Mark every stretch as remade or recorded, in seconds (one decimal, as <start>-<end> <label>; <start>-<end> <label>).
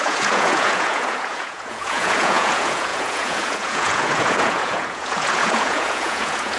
0.0-6.6 remade